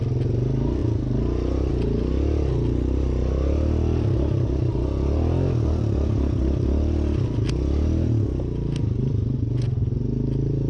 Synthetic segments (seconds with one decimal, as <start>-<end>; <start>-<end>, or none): none